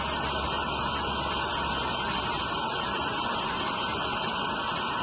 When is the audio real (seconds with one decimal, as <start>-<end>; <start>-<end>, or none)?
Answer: 0.0-5.0